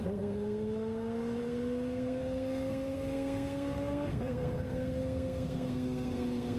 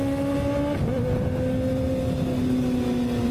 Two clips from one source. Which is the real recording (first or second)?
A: second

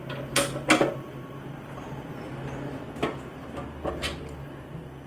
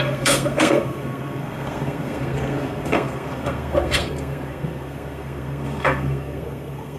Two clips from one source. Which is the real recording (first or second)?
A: first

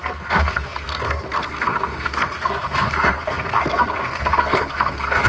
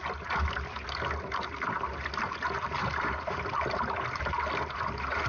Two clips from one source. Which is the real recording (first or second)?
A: second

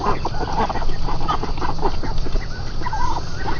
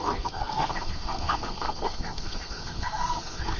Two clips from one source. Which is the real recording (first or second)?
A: first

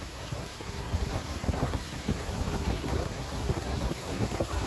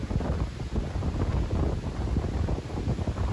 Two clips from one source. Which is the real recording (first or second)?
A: second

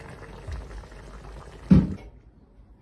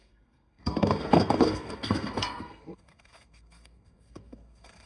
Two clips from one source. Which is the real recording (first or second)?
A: first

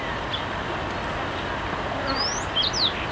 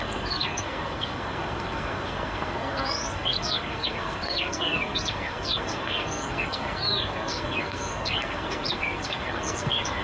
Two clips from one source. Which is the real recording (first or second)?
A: first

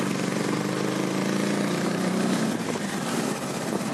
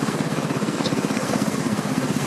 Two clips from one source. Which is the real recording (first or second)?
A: first